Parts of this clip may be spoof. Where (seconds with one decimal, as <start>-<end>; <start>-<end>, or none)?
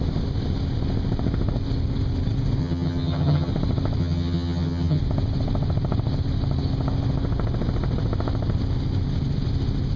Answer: 2.6-3.5; 4.0-5.0